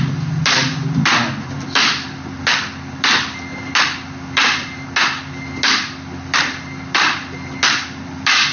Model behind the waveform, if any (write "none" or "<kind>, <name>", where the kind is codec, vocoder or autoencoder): none